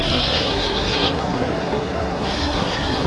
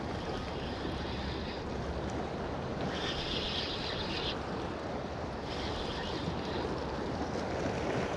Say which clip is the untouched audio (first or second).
second